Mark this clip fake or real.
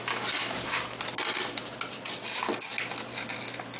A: real